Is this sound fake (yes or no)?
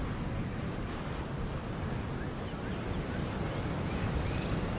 no